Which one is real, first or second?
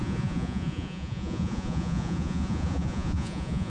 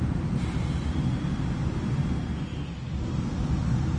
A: second